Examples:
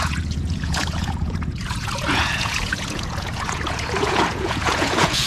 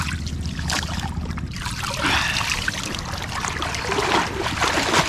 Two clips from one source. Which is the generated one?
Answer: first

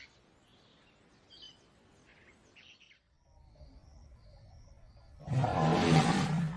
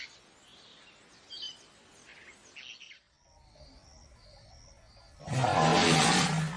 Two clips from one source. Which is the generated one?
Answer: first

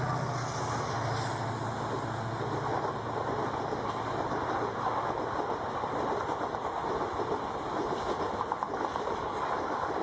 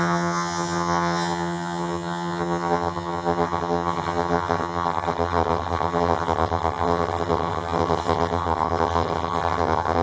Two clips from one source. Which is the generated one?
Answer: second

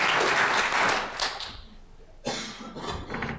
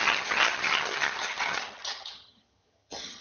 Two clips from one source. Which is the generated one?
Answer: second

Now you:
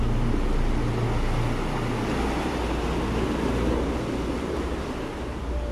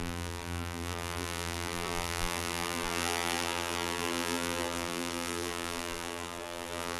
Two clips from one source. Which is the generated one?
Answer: second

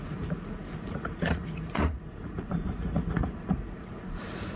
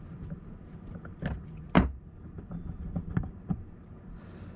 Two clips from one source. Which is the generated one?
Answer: first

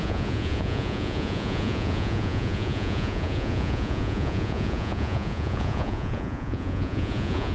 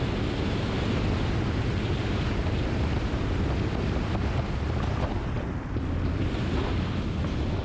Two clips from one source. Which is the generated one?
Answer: first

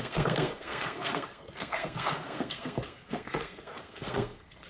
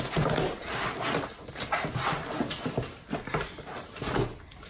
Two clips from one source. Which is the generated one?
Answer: first